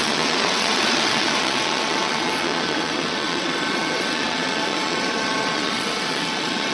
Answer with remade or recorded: remade